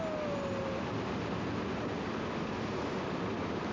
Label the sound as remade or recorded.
recorded